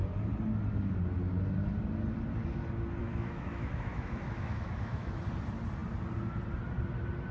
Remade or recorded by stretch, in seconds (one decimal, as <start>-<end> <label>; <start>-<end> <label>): 0.0-3.0 recorded; 3.0-5.2 remade; 5.2-7.3 recorded